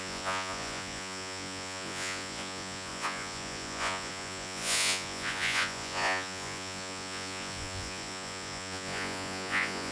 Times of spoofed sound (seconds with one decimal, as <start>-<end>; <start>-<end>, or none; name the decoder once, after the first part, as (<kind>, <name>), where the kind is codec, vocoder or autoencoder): 0.0-9.9 (vocoder, Vocos)

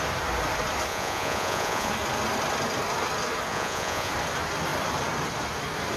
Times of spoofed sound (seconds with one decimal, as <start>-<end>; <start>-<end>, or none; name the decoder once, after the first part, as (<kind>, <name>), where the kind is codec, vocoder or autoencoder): 0.9-1.9 (vocoder, Vocos); 3.5-4.1

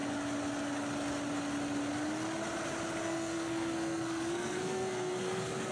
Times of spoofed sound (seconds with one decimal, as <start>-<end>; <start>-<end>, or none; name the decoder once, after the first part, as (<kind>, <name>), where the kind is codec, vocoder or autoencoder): 3.0-5.7 (codec, SNAC)

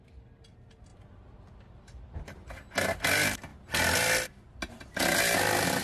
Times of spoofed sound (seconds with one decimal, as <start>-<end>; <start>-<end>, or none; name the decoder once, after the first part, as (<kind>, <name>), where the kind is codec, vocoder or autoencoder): none

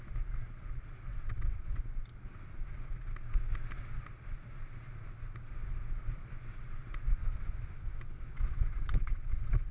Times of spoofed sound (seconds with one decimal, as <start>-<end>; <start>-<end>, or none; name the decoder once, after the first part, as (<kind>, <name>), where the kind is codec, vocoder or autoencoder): 1.1-1.8 (vocoder, WaveNeXt); 7.2-9.7

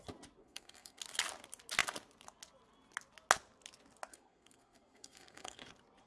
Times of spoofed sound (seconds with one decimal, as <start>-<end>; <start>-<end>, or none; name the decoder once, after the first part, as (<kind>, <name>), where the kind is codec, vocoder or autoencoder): 0.4-1.0 (codec, SNAC); 4.1-5.6

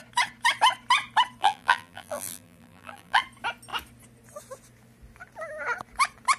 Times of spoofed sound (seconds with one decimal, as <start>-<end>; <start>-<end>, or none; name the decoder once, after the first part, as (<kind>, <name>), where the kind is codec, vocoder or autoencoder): 1.4-3.2 (vocoder, BigVGAN v2)